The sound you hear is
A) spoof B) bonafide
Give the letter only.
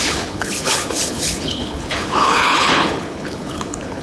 A